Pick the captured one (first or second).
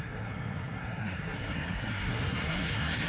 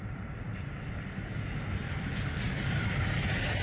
second